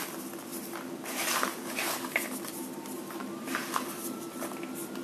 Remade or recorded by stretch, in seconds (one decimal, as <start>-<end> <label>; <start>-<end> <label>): 0.0-5.0 remade